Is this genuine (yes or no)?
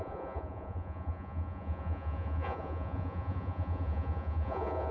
no